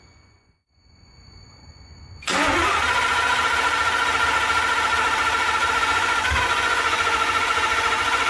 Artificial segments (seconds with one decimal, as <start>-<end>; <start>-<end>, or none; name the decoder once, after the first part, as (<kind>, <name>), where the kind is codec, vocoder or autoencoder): 0.0-2.6 (vocoder, Vocos); 5.8-8.3